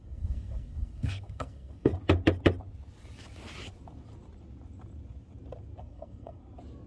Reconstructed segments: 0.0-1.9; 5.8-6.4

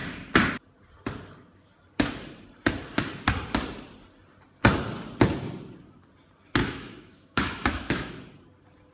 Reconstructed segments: 6.6-8.1

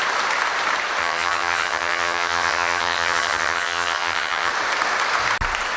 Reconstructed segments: 1.0-4.5

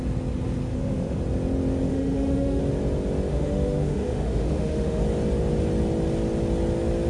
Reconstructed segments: 0.7-1.2; 1.9-2.6; 3.3-5.0

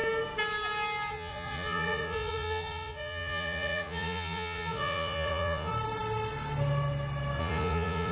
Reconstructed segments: 1.1-5.7; 7.4-8.1